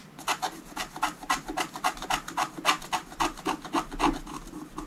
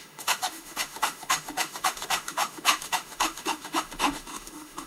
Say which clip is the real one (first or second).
first